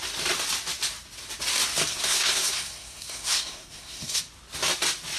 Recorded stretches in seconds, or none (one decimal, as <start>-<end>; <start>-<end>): 0.0-1.9; 4.2-5.2